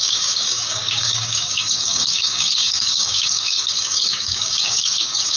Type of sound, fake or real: fake